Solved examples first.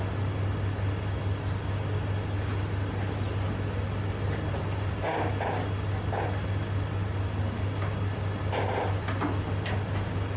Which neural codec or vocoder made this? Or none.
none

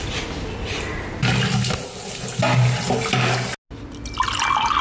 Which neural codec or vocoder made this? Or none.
none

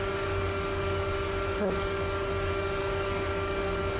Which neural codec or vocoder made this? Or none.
codec, DAC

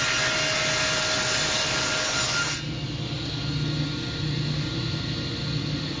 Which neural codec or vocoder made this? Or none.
none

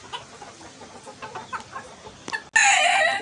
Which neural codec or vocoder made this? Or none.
none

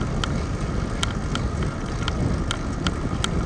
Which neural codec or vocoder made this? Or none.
none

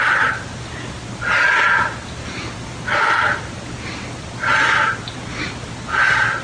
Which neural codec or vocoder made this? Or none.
none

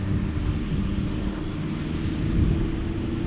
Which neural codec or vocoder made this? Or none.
none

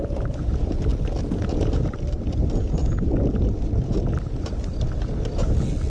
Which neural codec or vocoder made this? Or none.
none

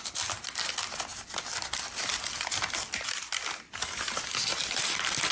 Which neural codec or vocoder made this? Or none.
none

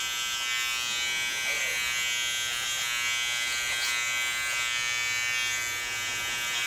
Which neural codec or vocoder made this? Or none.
none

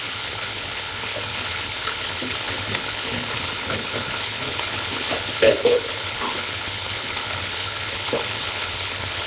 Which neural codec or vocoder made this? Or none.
codec, HILCodec